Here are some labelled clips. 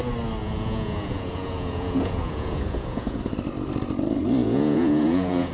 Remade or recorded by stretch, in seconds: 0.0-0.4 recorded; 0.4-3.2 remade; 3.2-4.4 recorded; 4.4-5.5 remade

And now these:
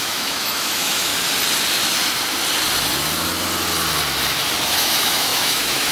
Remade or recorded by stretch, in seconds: 0.0-1.1 remade; 1.1-4.6 recorded; 4.6-5.9 remade

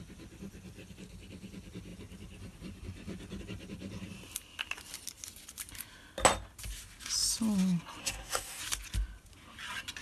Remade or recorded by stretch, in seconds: 0.0-8.0 recorded; 8.0-8.6 remade; 8.6-10.0 recorded

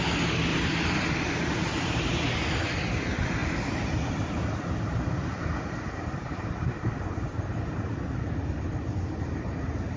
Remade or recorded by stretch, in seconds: 0.0-0.5 recorded; 0.5-2.1 remade; 2.1-4.9 recorded; 4.9-8.5 remade; 8.5-10.0 recorded

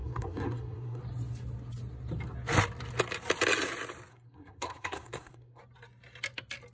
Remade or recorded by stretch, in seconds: 0.0-1.0 remade; 1.0-4.1 recorded; 4.1-5.6 remade; 5.6-6.7 recorded